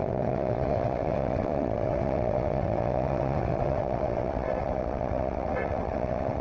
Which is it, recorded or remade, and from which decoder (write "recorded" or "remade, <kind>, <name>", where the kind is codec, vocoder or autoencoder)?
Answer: remade, vocoder, WaveNeXt